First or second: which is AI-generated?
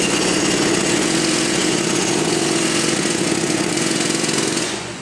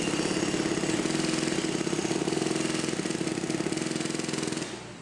first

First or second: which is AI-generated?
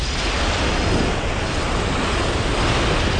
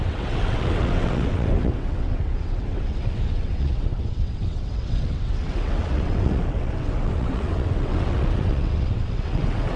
second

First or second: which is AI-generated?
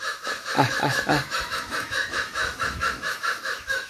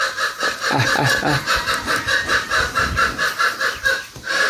first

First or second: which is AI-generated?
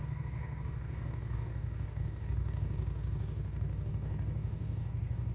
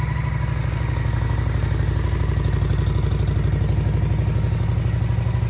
first